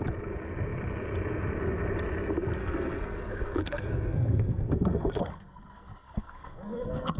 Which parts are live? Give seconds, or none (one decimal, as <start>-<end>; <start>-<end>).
0.0-2.6